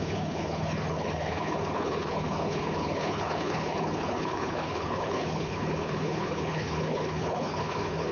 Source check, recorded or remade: remade